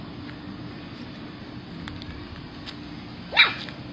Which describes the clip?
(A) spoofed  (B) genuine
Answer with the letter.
B